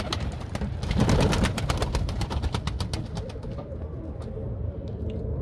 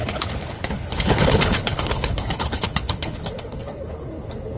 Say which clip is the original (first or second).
first